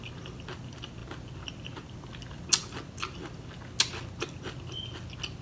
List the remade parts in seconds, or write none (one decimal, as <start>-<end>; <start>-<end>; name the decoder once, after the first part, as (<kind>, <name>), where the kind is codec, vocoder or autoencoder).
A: none